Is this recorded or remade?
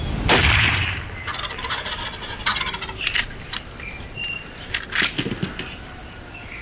recorded